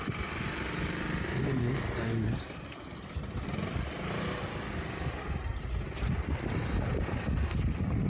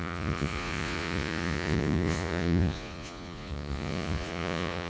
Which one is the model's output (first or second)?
second